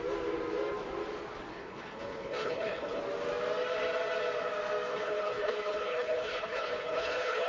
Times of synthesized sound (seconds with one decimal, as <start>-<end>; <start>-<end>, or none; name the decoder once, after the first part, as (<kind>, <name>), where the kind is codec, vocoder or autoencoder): 1.5-3.0 (codec, HILCodec); 4.9-7.5